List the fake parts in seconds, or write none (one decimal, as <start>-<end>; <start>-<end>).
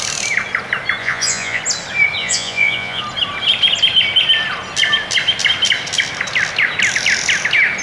1.0-1.6; 2.2-3.0